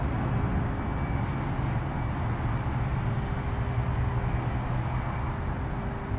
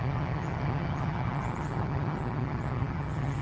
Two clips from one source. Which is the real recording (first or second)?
first